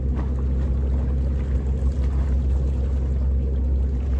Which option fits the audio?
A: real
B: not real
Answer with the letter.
A